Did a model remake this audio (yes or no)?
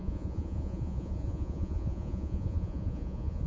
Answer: yes